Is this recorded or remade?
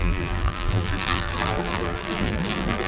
remade